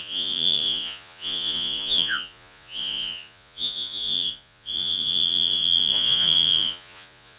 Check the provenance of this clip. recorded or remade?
remade